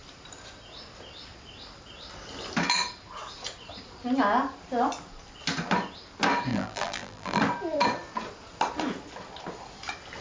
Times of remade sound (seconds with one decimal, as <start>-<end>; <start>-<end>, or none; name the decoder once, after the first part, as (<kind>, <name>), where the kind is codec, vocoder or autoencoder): 6.5-7.4 (vocoder, BigVGAN v2)